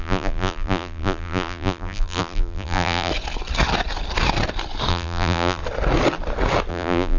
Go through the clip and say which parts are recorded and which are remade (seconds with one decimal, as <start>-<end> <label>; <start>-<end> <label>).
0.0-3.1 remade; 3.1-4.9 recorded; 4.9-5.6 remade; 5.6-6.7 recorded; 6.7-7.2 remade